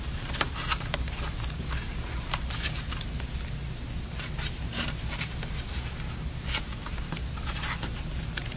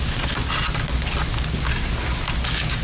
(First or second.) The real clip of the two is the second